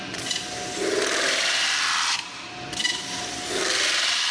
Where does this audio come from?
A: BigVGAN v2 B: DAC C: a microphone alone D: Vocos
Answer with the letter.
C